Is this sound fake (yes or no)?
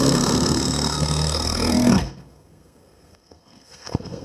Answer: yes